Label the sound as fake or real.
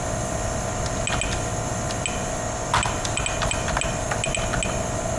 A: real